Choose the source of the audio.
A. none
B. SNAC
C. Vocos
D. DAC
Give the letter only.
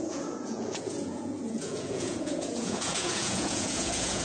C